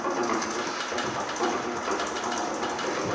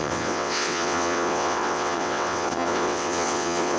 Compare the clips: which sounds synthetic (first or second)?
second